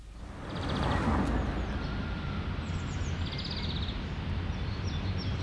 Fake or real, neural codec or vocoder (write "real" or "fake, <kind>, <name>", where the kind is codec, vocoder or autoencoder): real